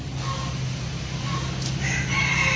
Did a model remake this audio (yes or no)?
no